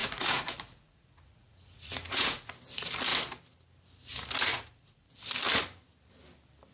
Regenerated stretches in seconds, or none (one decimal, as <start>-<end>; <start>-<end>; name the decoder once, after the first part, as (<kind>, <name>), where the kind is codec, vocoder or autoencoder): 0.0-2.5 (vocoder, Vocos); 4.5-5.1